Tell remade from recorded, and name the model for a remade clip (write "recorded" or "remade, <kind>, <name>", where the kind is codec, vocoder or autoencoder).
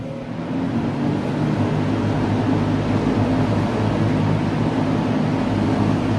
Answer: recorded